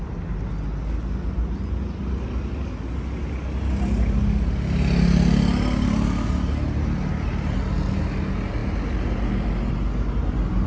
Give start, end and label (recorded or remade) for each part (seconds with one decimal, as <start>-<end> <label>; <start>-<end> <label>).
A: 0.0-10.7 recorded